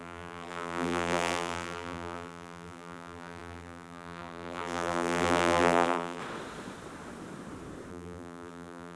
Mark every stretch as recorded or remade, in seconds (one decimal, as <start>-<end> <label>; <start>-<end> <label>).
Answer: 0.0-6.2 remade; 6.2-7.9 recorded; 7.9-9.0 remade